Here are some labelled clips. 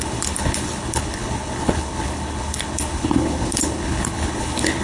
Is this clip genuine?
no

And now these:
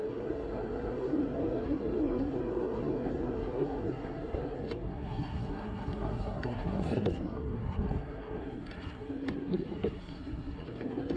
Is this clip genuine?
no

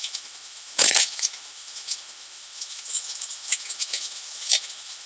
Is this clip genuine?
no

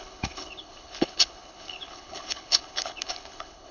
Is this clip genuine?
no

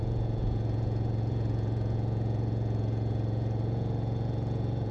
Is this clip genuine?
no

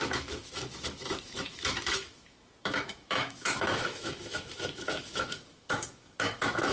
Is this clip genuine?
no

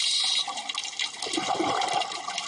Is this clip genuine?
yes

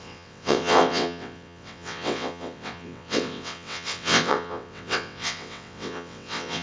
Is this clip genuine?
no